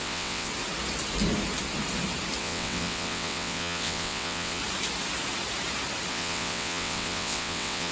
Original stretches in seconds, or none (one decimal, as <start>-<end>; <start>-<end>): 0.5-2.4; 4.6-6.1